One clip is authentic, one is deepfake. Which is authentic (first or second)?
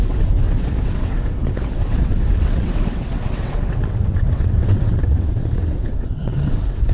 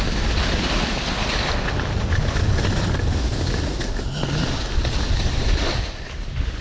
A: second